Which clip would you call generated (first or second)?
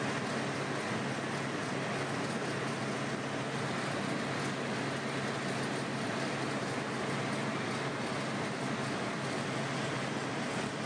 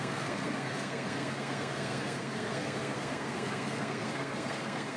second